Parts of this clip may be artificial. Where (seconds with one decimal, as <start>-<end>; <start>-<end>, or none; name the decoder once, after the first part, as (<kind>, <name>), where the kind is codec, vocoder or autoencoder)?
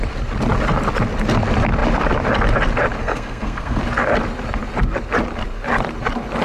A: 3.0-3.8 (codec, SNAC)